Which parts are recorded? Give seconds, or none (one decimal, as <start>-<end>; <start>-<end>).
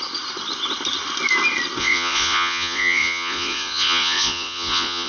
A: 0.0-1.8